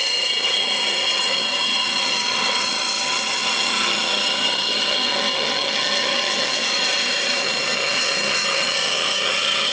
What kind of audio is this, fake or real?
fake